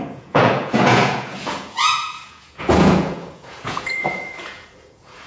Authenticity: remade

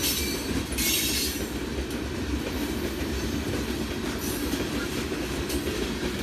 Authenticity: recorded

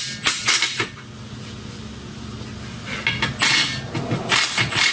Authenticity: recorded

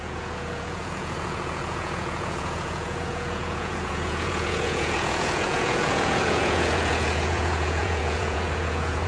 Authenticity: remade